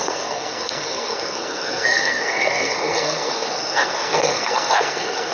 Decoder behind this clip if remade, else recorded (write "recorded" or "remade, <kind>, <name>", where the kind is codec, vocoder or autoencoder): remade, codec, SNAC